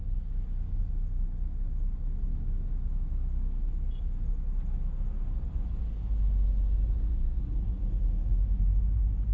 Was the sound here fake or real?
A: real